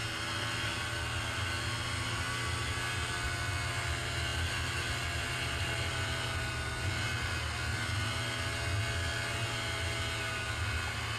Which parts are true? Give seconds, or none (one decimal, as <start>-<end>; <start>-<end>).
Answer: 0.0-11.2